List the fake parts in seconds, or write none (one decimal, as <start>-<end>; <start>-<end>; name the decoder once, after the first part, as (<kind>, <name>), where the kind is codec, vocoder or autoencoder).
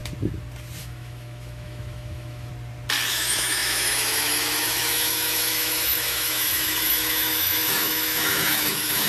0.8-2.5 (autoencoder, DAC-VAE); 3.1-9.1